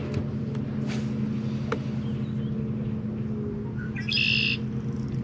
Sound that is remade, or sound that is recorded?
recorded